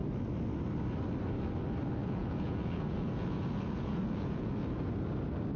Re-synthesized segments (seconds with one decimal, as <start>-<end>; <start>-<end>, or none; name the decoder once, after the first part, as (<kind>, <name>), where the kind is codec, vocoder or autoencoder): 2.0-4.5 (vocoder, Vocos)